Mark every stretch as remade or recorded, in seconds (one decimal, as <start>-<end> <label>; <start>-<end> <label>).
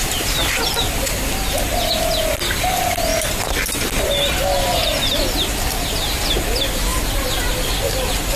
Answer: 0.0-8.4 recorded